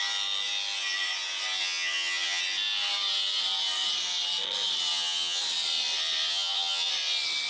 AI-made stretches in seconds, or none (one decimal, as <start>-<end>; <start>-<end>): 1.6-2.4; 4.9-5.4; 6.3-6.9